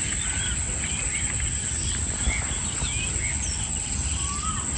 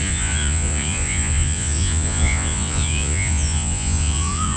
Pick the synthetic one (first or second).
second